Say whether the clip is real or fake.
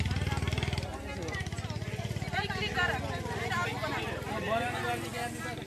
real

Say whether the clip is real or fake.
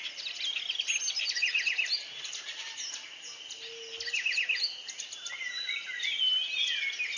real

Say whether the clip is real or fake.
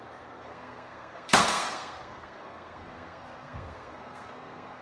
fake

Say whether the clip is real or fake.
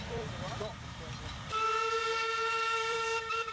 fake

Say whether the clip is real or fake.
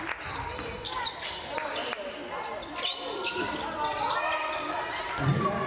real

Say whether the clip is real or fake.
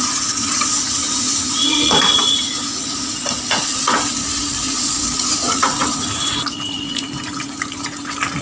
fake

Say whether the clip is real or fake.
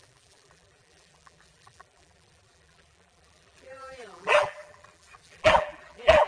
fake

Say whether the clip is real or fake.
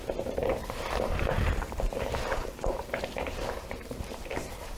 fake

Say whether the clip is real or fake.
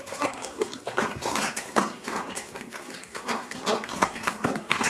fake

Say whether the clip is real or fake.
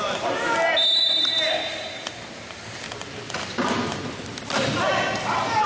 real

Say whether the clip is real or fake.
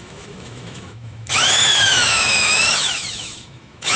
fake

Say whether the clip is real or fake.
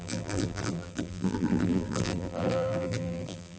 fake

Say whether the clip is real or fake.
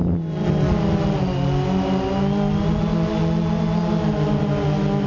real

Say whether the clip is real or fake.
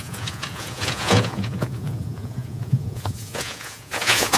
fake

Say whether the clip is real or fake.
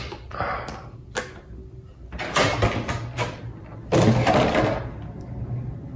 real